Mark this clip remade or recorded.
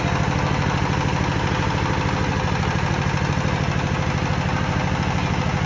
recorded